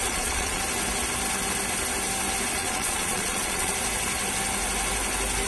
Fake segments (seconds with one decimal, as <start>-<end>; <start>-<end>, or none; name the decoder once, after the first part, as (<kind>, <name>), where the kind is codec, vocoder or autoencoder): 0.0-0.6 (vocoder, Vocos); 2.6-3.7